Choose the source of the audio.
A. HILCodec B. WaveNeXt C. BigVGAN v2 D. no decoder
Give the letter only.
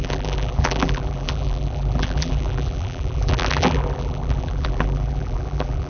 C